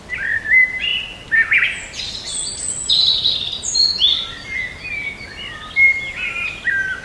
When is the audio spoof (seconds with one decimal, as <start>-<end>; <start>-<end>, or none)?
none